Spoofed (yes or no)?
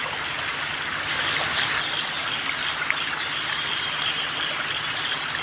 no